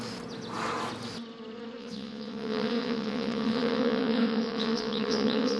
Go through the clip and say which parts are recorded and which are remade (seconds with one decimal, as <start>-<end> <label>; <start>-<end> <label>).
0.0-1.8 recorded; 1.8-5.6 remade